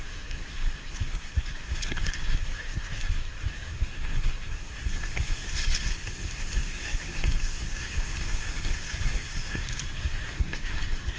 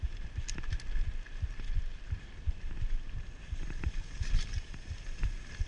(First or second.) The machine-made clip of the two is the first